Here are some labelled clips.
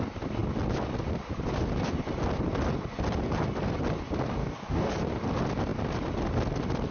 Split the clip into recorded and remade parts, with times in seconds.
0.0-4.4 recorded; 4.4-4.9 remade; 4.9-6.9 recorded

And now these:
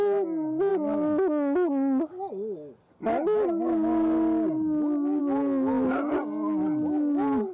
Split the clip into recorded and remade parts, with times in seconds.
0.0-7.5 recorded

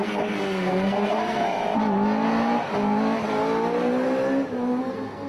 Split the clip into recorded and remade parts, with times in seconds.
0.0-1.6 remade; 1.6-4.8 recorded; 4.8-5.3 remade

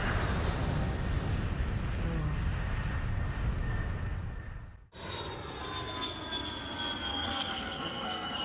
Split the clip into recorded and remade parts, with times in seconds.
0.0-7.1 recorded; 7.1-8.4 remade

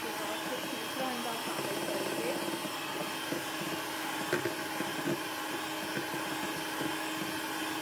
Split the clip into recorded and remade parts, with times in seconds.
0.0-7.8 recorded

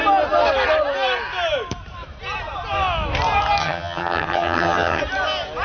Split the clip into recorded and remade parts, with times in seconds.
0.0-3.6 recorded; 3.6-5.0 remade; 5.0-5.6 recorded

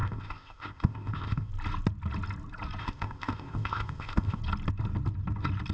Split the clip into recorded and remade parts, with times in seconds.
0.0-1.5 remade; 1.5-2.8 recorded; 2.8-4.4 remade; 4.4-5.7 recorded

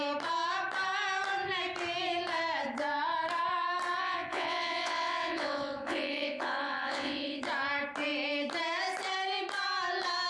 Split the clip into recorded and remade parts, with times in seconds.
0.0-4.0 recorded; 4.0-7.4 remade; 7.4-10.3 recorded